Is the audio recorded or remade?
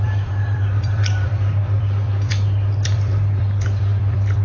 remade